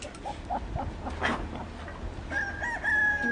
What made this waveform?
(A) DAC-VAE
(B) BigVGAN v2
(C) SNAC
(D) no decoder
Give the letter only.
D